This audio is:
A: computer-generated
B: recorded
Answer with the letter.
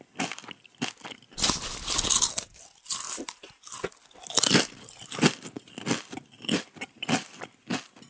B